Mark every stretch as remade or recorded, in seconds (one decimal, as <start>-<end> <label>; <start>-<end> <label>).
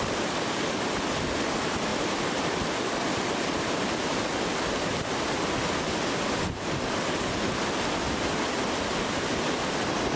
0.0-10.2 recorded